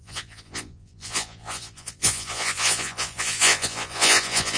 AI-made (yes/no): yes